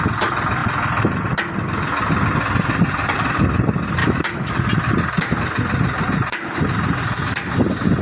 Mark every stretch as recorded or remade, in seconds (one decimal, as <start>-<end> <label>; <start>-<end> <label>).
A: 0.0-4.0 recorded; 4.0-4.5 remade; 4.5-8.0 recorded